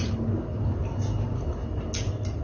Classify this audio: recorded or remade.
recorded